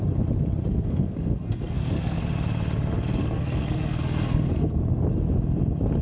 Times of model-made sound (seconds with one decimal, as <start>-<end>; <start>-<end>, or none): 0.7-2.2; 3.2-4.8